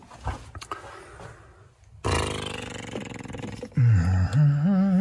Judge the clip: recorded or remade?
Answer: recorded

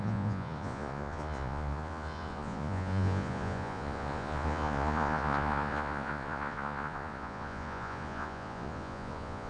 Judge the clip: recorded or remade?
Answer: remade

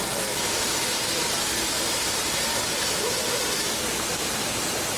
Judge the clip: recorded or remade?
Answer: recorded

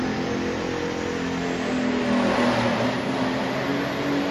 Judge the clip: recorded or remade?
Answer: recorded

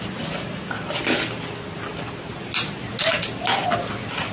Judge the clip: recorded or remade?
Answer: recorded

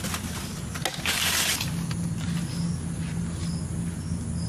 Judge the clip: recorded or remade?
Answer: recorded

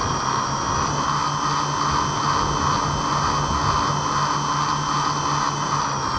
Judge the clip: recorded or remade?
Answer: recorded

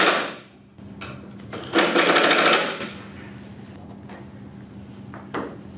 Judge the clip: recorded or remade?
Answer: recorded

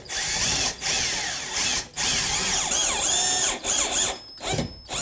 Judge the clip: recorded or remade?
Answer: recorded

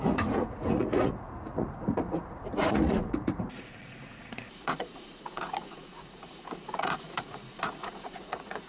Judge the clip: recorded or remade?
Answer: remade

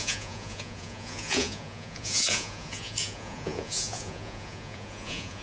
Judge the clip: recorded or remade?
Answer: remade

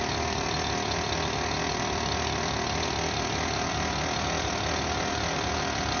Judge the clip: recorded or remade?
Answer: recorded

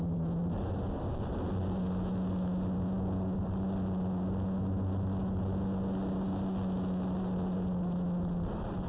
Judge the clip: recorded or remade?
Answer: recorded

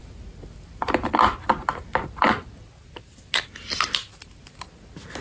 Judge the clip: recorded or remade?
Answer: recorded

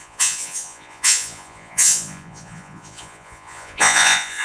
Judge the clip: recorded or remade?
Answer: remade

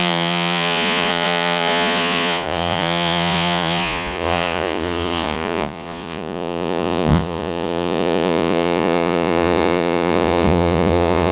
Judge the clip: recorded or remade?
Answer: remade